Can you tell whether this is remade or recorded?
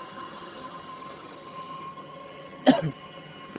remade